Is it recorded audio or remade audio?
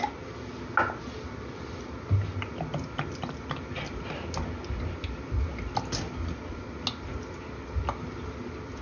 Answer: recorded